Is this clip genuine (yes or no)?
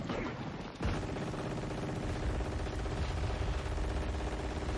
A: yes